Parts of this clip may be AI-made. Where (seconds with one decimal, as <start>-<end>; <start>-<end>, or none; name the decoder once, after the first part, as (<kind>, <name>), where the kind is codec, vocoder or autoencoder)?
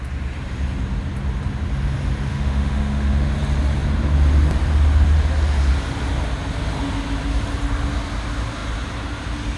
2.3-3.3 (autoencoder, DAC-VAE)